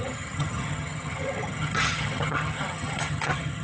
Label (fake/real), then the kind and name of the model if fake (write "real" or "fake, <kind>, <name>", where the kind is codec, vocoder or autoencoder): fake, vocoder, HiFi-GAN